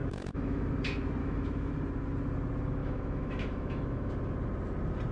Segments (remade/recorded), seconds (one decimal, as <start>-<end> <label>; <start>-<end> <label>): 0.0-0.7 remade; 0.7-1.2 recorded; 1.2-1.7 remade; 1.7-2.8 recorded; 2.8-4.1 remade; 4.1-5.1 recorded